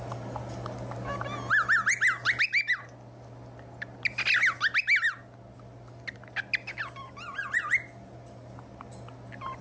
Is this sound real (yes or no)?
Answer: yes